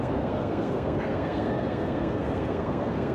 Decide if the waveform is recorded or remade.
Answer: remade